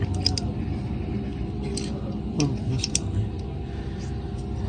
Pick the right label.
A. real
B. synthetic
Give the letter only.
A